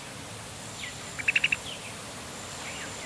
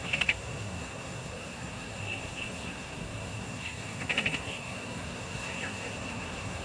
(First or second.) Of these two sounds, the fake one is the second